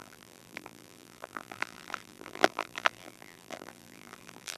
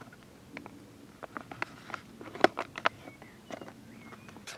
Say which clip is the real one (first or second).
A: second